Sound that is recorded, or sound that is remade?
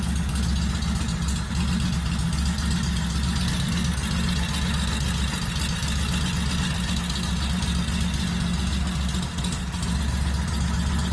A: recorded